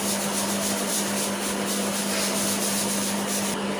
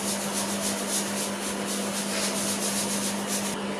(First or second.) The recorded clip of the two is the second